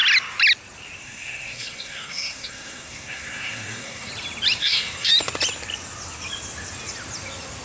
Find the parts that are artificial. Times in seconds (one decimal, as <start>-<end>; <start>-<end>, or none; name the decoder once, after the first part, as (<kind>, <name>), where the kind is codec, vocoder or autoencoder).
1.0-4.1 (codec, SNAC); 4.6-5.1